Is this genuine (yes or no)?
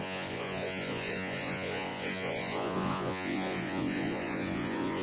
no